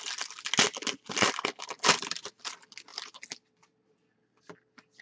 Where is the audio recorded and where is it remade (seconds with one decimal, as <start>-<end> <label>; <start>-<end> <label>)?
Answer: 0.0-2.9 recorded; 2.9-4.5 remade; 4.5-5.0 recorded

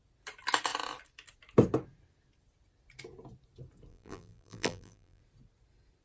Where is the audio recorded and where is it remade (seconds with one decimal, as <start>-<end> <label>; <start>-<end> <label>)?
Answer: 0.0-3.9 recorded; 3.9-5.2 remade; 5.2-6.0 recorded

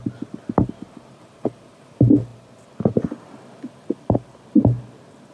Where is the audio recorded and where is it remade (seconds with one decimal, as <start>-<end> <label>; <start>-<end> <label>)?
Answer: 0.0-5.3 recorded

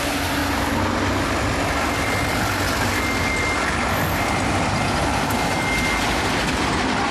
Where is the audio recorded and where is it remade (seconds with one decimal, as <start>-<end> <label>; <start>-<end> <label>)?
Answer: 0.0-7.1 recorded